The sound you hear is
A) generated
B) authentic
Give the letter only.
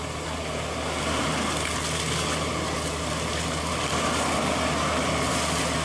B